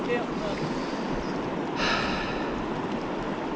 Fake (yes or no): no